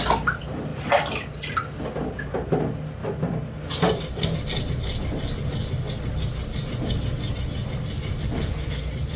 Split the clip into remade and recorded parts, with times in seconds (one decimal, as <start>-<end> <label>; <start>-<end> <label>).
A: 0.0-9.2 recorded